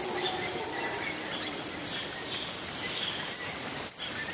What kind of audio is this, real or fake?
real